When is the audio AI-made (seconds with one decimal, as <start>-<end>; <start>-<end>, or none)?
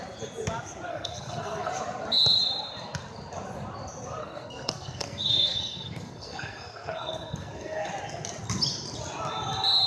0.9-1.7; 4.2-7.9